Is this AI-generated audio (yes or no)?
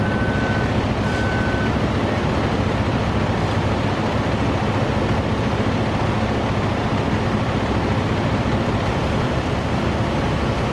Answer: no